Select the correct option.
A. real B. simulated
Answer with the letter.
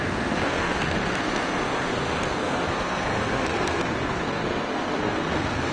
B